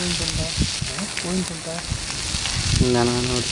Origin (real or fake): real